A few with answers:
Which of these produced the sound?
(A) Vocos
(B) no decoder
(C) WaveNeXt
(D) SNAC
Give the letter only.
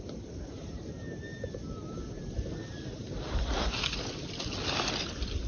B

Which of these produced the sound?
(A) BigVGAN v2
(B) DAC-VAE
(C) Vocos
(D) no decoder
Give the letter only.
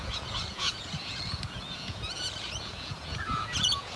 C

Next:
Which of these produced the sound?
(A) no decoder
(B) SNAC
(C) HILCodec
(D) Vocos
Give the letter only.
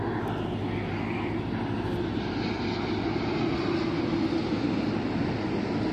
A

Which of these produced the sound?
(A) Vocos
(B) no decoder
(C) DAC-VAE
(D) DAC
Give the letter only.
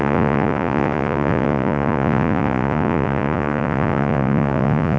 A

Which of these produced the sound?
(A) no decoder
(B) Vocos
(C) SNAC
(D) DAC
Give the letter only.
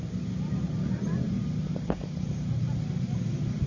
A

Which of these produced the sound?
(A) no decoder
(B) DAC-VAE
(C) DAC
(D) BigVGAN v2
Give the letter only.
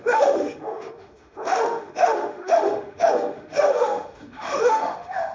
B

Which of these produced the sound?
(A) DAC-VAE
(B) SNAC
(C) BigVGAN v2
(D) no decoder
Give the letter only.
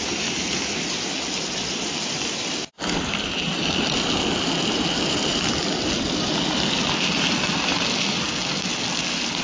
D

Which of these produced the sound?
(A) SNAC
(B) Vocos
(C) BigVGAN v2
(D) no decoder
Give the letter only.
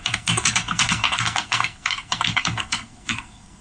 A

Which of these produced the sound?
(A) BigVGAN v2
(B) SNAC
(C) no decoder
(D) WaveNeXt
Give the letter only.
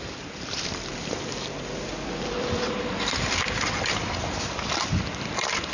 A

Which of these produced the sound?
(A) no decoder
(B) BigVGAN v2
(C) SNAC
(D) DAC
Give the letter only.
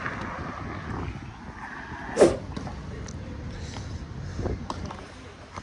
A